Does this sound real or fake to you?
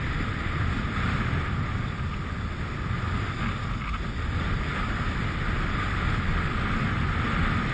real